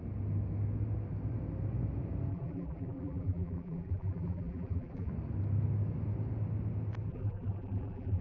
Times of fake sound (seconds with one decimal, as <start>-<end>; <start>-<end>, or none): 2.3-5.1; 7.1-8.2